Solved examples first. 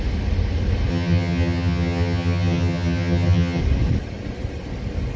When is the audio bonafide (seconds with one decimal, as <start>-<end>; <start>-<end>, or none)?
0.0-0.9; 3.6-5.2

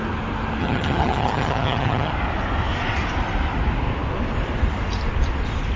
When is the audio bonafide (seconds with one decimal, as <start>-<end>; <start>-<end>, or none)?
0.0-0.6; 2.1-5.8

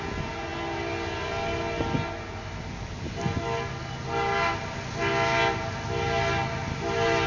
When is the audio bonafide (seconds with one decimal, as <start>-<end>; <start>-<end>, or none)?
0.0-7.3

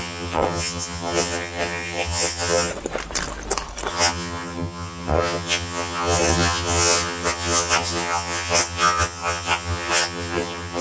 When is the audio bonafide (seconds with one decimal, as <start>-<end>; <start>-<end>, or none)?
2.7-3.9